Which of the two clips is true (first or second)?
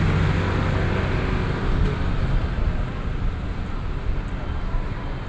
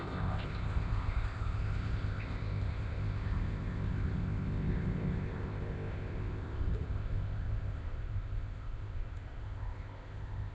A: first